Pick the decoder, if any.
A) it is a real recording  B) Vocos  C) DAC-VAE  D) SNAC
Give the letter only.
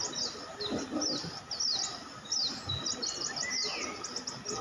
A